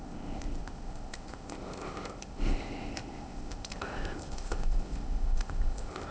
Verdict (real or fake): fake